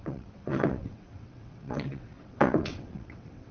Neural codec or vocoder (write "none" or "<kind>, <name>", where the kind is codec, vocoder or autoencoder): vocoder, WaveNeXt